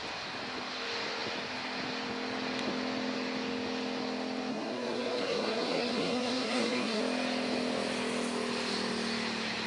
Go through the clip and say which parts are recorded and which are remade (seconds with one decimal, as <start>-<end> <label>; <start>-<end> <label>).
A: 0.0-4.5 recorded; 4.5-7.0 remade; 7.0-9.7 recorded